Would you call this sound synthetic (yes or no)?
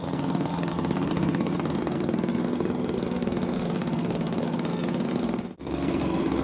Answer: yes